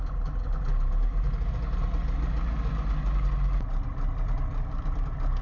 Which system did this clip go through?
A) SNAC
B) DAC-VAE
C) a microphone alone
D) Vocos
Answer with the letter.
C